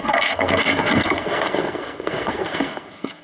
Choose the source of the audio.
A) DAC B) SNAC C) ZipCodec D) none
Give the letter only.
B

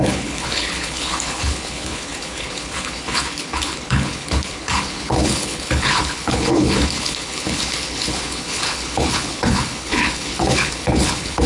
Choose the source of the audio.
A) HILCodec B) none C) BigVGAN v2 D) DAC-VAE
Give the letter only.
A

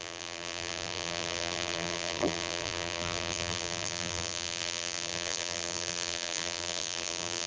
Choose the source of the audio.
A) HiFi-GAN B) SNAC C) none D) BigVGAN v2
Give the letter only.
D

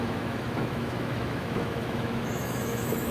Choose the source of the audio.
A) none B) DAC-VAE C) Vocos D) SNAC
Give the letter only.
B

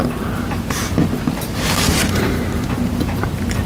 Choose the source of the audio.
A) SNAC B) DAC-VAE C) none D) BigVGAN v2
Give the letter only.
D